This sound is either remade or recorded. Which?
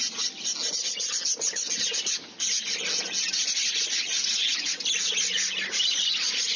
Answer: recorded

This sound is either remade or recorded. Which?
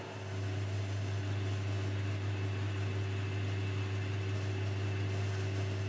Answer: recorded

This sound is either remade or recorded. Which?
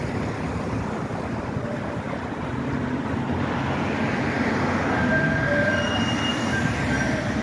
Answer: recorded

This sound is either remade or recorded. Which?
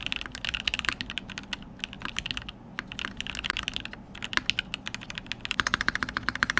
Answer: recorded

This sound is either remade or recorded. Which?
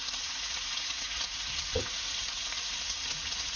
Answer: remade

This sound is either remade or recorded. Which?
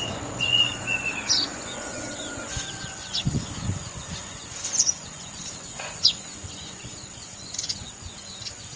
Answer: remade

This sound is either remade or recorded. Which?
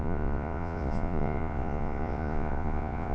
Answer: remade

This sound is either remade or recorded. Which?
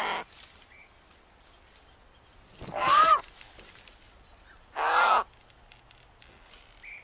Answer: recorded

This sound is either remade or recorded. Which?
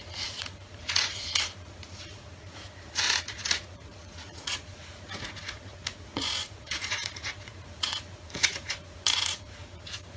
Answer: remade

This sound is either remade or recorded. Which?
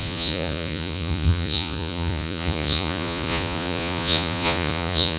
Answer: remade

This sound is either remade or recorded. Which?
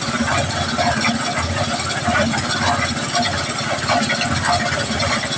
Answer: recorded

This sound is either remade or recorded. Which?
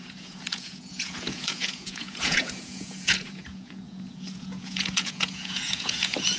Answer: remade